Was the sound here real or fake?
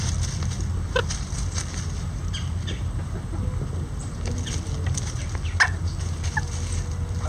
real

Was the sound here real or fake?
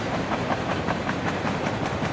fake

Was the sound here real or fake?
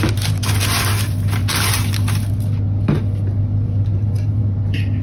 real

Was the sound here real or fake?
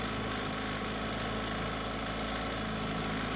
real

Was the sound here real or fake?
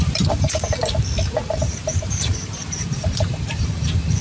fake